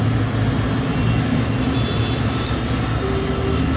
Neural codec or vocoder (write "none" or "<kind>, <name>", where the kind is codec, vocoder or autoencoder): none